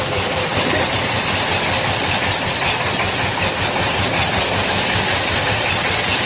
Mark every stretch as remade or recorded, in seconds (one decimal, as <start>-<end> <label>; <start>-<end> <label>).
0.0-6.3 recorded